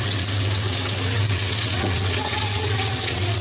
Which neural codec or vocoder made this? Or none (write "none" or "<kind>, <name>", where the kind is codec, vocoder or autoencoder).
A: vocoder, WaveNeXt